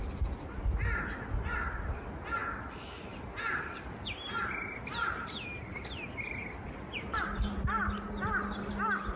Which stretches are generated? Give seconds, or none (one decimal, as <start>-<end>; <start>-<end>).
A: none